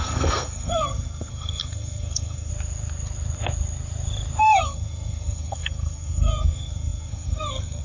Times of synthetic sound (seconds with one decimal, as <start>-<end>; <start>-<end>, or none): 0.0-2.5; 4.4-7.8